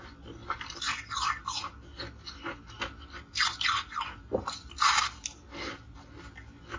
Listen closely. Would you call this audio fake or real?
real